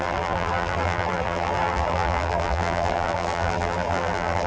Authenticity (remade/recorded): remade